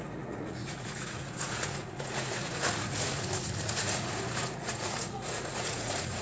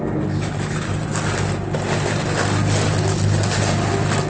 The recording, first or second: second